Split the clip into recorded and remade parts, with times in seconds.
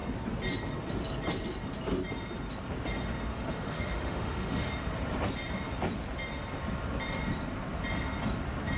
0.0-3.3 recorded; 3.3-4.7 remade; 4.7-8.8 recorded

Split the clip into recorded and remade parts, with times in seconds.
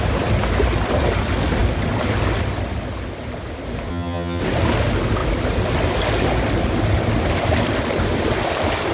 0.0-3.9 recorded; 3.9-4.4 remade; 4.4-8.9 recorded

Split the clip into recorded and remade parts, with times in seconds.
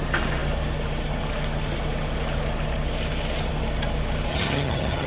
0.0-4.3 recorded; 4.3-5.1 remade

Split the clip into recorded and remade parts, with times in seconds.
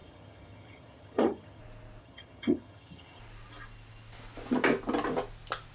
0.0-1.6 remade; 1.6-2.0 recorded; 2.0-3.2 remade; 3.2-5.7 recorded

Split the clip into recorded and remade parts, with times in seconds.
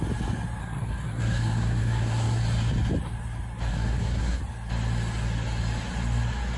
0.0-0.6 recorded; 0.6-2.4 remade; 2.4-3.7 recorded; 3.7-4.4 remade; 4.4-6.6 recorded